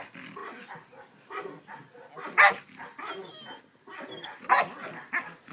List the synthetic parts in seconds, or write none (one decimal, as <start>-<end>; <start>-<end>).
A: none